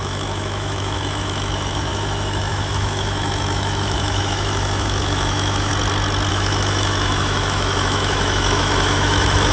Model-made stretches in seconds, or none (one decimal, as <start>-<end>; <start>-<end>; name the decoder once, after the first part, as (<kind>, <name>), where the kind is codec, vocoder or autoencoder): 0.0-5.7 (autoencoder, DAC-VAE); 6.3-9.5